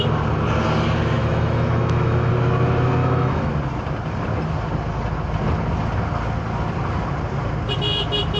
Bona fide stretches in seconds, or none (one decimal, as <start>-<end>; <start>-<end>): 0.0-1.2; 2.3-3.0; 3.5-8.4